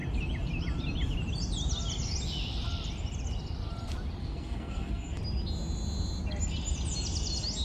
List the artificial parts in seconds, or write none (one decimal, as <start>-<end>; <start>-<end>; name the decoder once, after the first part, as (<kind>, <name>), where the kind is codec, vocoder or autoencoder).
4.2-5.2 (codec, SNAC)